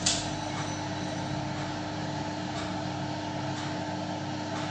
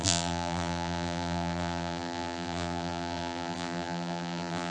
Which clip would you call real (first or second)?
first